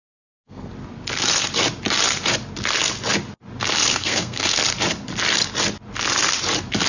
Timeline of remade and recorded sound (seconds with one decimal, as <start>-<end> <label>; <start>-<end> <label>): 0.0-0.7 remade; 0.7-3.9 recorded; 3.9-4.6 remade; 4.6-6.9 recorded